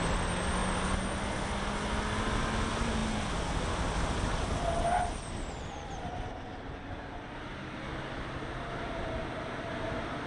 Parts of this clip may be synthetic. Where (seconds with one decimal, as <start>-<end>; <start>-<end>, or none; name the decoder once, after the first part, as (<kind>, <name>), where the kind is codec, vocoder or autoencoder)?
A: none